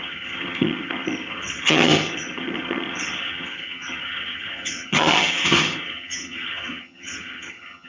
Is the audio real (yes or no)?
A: no